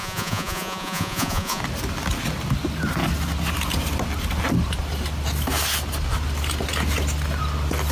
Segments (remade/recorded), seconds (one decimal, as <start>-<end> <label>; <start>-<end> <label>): 0.0-1.6 remade; 1.6-7.9 recorded